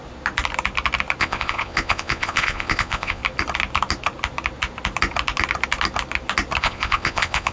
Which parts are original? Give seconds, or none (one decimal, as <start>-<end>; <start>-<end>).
0.0-1.2; 3.2-6.6